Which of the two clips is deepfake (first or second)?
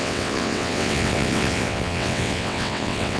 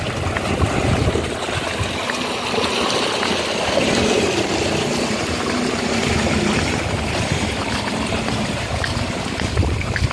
first